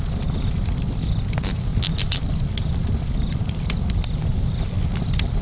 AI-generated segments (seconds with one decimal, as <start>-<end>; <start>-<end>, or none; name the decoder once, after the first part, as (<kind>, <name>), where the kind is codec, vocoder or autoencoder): none